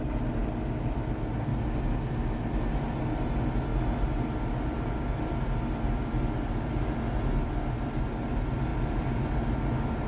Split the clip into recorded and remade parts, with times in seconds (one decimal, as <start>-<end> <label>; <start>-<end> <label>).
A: 0.0-10.1 recorded